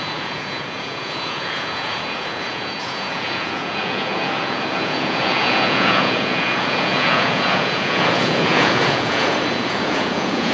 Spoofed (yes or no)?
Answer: yes